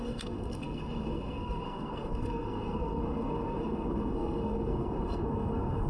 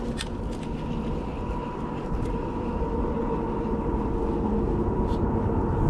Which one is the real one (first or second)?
second